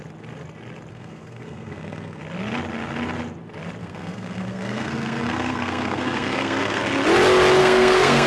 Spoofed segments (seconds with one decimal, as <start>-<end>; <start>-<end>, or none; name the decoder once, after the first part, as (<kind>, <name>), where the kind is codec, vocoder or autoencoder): 0.9-2.2 (codec, SNAC); 3.8-6.8; 7.6-8.3